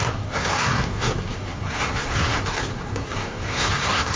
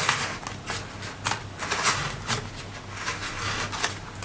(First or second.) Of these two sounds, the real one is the second